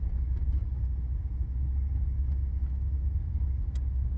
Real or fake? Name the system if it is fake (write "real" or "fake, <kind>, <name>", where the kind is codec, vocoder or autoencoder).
real